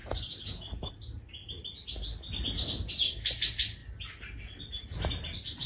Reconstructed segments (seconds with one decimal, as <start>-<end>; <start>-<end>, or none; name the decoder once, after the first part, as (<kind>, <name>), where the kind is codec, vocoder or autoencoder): 0.0-0.9 (codec, DAC)